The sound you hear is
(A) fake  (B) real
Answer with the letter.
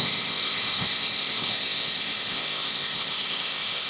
A